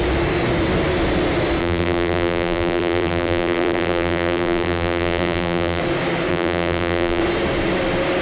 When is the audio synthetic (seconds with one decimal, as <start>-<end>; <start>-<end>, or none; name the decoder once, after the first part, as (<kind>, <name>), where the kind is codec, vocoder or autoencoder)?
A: 1.6-5.8 (vocoder, BigVGAN v2); 6.3-7.2